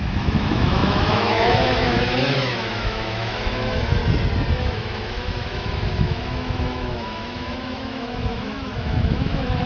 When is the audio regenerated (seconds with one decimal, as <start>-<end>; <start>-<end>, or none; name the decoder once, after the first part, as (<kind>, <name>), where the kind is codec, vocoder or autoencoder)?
0.0-4.0 (autoencoder, DAC-VAE); 4.6-9.7